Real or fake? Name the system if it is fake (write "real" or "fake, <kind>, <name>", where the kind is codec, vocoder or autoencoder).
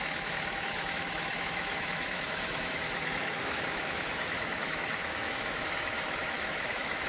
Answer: fake, autoencoder, DAC-VAE